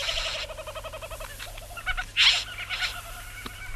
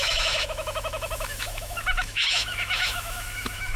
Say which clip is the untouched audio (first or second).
first